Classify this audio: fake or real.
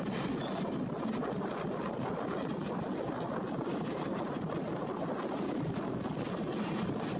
real